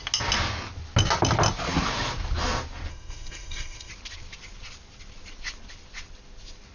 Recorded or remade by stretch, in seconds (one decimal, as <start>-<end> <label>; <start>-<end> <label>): 0.0-2.9 recorded; 2.9-3.9 remade; 3.9-6.7 recorded